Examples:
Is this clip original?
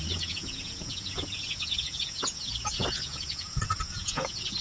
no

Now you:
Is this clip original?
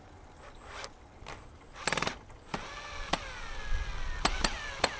yes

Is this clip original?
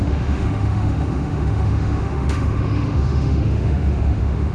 no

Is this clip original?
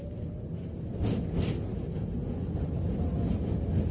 yes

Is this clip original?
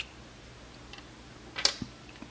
yes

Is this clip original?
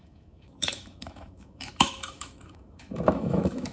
no